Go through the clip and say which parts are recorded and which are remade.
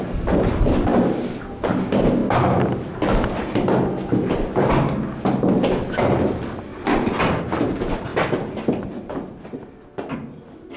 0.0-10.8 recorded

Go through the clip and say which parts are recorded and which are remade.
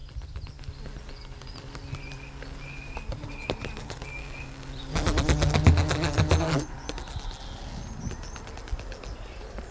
0.0-9.7 recorded